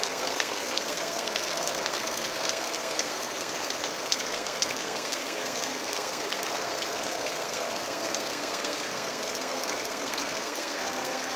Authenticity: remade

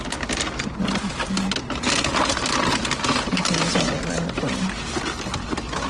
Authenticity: recorded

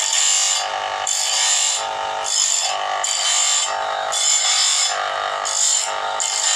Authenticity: recorded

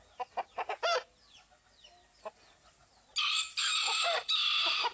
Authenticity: recorded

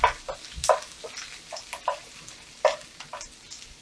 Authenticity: recorded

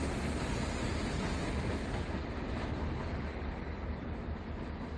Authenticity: recorded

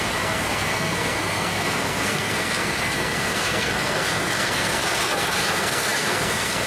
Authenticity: remade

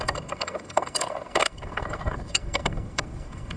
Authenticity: remade